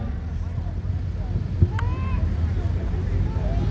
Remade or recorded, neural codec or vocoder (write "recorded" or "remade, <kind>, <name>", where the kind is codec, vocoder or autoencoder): recorded